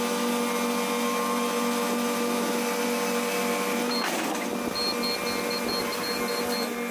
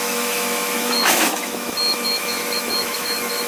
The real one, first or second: first